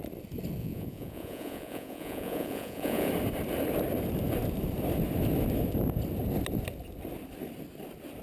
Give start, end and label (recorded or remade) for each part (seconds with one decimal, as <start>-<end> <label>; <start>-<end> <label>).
0.0-0.6 recorded; 0.6-3.1 remade; 3.1-8.2 recorded